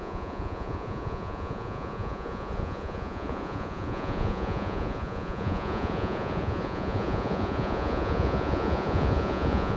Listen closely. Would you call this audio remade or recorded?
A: remade